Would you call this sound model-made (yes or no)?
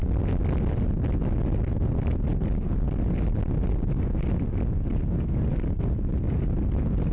no